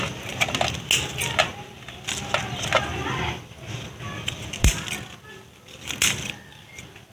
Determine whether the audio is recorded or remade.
recorded